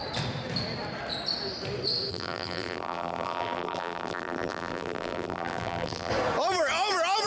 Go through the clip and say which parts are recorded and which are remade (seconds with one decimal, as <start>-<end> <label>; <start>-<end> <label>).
0.0-2.1 recorded; 2.1-6.1 remade; 6.1-7.3 recorded